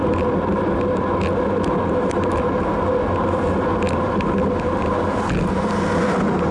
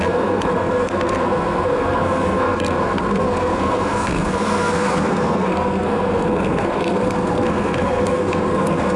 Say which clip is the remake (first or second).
second